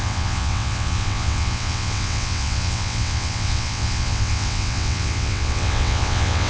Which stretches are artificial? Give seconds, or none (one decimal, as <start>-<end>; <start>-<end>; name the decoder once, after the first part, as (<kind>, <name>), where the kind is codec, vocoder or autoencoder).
0.0-6.5 (vocoder, WaveNeXt)